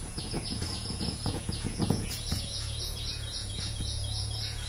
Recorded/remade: remade